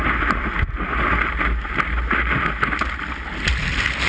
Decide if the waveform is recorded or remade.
recorded